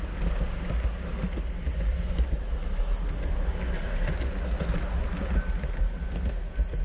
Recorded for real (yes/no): yes